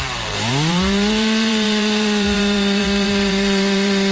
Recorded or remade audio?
remade